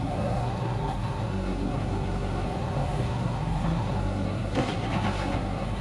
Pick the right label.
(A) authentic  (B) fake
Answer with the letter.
B